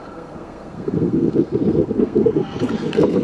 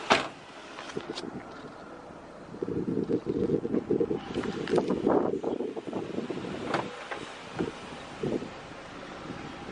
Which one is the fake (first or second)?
first